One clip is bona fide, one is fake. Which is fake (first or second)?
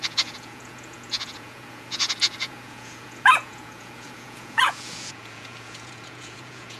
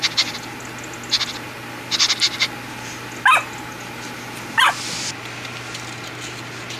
first